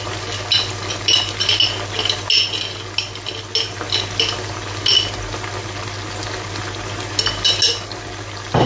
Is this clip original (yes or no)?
yes